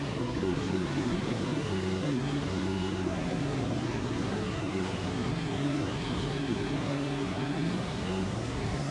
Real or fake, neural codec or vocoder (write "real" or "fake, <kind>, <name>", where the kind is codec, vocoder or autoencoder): fake, codec, SNAC